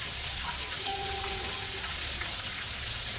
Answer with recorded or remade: remade